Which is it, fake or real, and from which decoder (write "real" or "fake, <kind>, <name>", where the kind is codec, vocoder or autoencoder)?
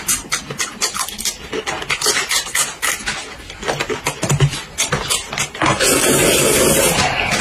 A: real